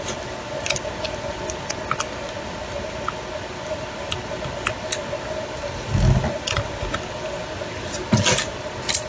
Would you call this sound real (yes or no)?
yes